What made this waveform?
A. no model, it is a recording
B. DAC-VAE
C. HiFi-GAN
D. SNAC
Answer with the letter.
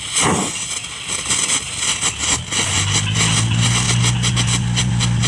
A